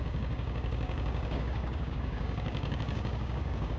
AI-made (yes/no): yes